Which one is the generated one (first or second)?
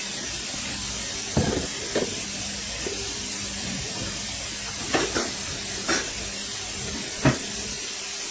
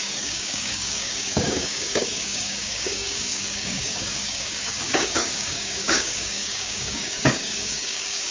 second